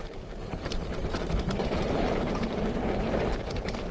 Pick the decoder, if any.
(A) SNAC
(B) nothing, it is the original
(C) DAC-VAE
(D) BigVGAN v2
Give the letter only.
D